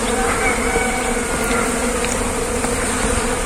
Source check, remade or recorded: recorded